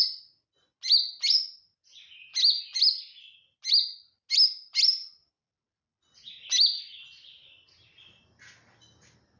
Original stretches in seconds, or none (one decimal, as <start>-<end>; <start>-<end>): 0.0-9.4